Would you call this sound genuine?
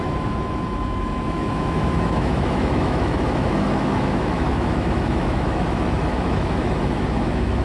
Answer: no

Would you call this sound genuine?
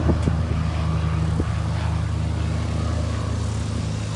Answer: yes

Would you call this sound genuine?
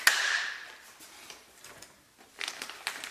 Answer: yes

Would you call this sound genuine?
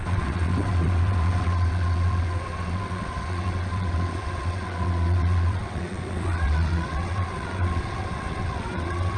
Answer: no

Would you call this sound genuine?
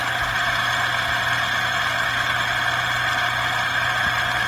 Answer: yes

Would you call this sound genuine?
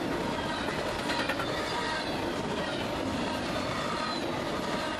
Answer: yes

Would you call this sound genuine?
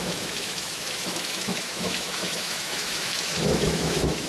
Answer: no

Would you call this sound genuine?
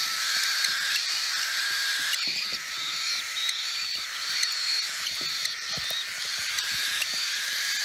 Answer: yes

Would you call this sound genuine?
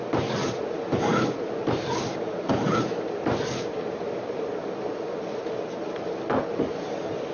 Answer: yes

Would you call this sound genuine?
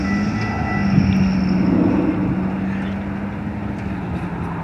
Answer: yes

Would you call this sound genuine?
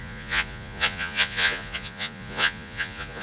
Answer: no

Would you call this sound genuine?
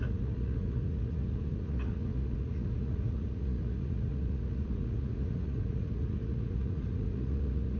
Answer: no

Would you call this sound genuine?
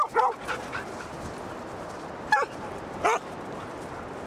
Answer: yes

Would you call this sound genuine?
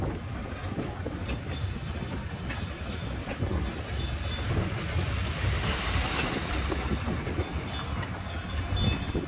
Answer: yes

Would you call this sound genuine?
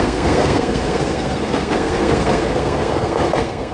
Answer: no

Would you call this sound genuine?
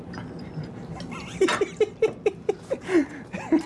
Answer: yes